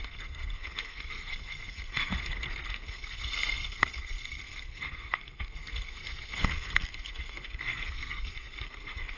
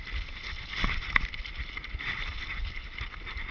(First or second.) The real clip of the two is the second